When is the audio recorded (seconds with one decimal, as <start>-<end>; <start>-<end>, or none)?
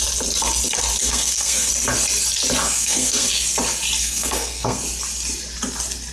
0.0-1.0; 1.7-2.6; 3.3-4.0; 4.8-6.1